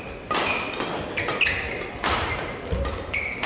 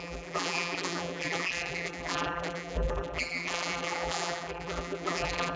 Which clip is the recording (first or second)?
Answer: first